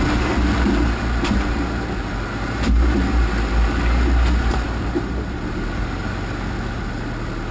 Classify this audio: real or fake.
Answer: real